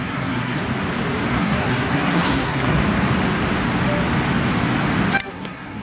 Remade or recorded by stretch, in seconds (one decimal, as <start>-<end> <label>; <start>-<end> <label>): 0.0-0.6 remade; 0.6-1.3 recorded; 1.3-2.8 remade; 2.8-5.3 recorded; 5.3-5.8 remade